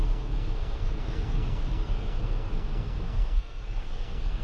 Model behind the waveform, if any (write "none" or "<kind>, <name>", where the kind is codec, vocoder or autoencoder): codec, SNAC